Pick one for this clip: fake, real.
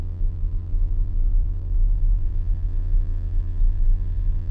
fake